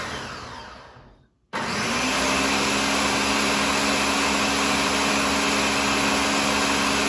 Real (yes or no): yes